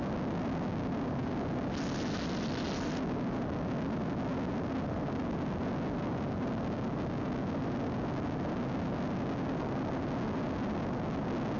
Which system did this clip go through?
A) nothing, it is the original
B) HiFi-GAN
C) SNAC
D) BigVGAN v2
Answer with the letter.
A